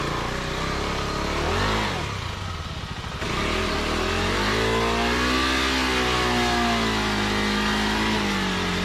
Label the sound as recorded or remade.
recorded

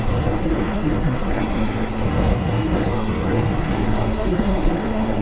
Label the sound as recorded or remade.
remade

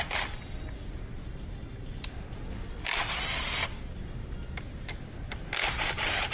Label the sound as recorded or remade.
recorded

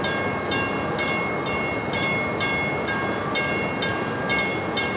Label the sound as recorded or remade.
recorded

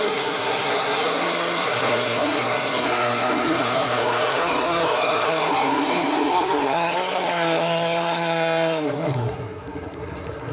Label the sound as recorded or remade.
remade